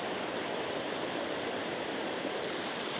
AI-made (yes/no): yes